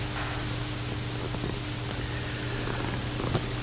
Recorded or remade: recorded